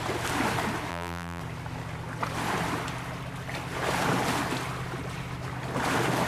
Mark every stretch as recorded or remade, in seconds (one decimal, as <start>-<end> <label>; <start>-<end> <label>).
0.0-0.9 recorded; 0.9-1.4 remade; 1.4-6.3 recorded